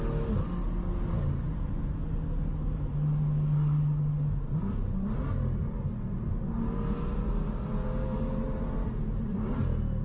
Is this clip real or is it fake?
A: real